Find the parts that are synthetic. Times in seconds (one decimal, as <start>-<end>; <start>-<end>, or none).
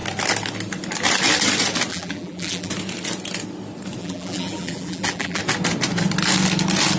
1.9-2.7; 4.0-5.4